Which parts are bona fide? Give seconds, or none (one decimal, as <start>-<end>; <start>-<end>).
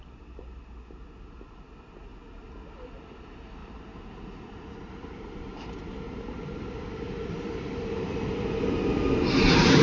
0.0-3.6; 7.3-9.8